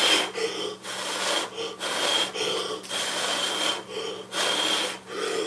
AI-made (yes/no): no